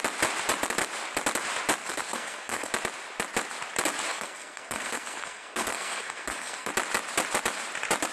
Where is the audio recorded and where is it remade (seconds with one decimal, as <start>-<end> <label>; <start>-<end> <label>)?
0.0-1.8 recorded; 1.8-2.7 remade; 2.7-4.1 recorded; 4.1-6.7 remade; 6.7-8.1 recorded